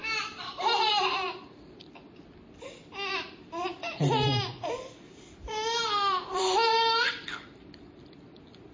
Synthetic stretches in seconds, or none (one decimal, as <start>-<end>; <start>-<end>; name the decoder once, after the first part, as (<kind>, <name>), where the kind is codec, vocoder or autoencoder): 0.0-1.9 (vocoder, BigVGAN v2); 3.1-8.1